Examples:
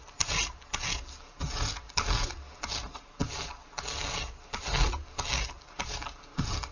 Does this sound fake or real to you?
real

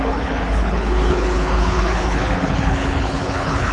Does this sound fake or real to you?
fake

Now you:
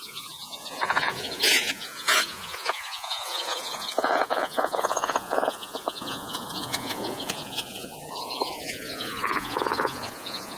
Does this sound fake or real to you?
fake